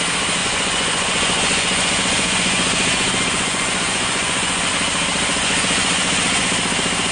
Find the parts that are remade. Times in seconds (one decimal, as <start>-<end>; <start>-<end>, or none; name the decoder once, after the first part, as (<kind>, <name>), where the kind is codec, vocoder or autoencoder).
0.4-4.7 (vocoder, Vocos); 5.3-6.5